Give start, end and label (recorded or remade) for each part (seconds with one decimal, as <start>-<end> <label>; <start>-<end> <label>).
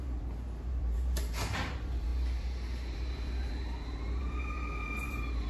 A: 0.0-5.5 remade